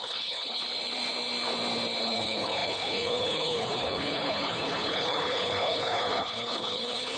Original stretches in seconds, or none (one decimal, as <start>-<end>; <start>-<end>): 0.6-2.0